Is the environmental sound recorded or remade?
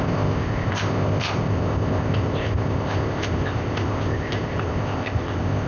remade